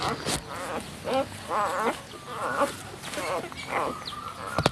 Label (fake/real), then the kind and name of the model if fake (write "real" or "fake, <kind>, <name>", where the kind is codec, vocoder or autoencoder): real